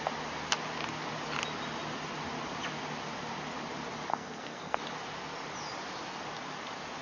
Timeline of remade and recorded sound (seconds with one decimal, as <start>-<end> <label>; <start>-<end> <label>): 0.0-4.1 recorded; 4.1-4.8 remade; 4.8-7.0 recorded